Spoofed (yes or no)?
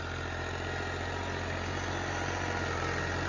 no